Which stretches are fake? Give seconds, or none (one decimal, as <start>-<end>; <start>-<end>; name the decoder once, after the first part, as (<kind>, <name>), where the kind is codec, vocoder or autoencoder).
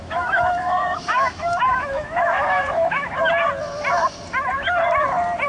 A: 0.0-3.3 (autoencoder, DAC-VAE)